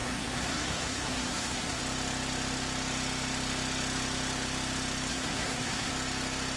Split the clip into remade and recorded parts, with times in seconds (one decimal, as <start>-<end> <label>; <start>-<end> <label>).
0.0-1.8 remade; 1.8-5.1 recorded; 5.1-5.9 remade; 5.9-6.6 recorded